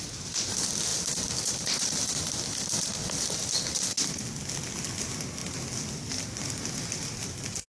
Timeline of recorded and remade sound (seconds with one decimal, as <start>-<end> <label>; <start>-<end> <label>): 0.0-7.7 recorded